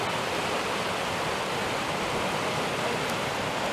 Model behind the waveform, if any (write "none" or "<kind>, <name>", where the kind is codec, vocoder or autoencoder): none